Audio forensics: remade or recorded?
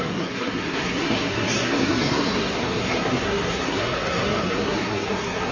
remade